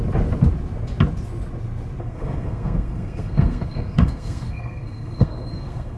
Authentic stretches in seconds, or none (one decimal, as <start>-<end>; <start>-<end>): 0.0-2.0